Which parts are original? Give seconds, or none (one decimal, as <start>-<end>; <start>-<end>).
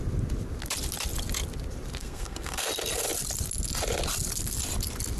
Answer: 0.0-2.0; 2.7-5.2